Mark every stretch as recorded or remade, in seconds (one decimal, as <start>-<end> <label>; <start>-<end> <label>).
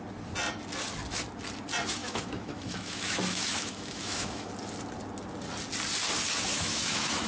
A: 0.0-2.0 recorded; 2.0-4.5 remade; 4.5-6.5 recorded; 6.5-7.3 remade